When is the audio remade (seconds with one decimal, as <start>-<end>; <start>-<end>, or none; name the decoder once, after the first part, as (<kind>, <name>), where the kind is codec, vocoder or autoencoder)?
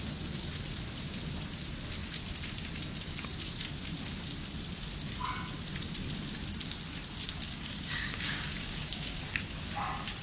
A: 7.4-9.2 (codec, DAC)